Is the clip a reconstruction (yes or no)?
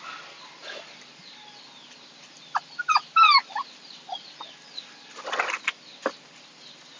no